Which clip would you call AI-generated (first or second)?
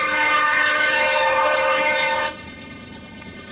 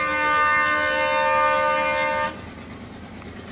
first